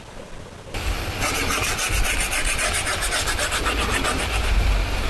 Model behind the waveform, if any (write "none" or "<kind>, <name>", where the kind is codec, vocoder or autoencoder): none